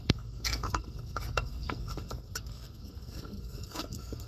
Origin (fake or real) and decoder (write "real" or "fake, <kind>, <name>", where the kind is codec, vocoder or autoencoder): fake, codec, SNAC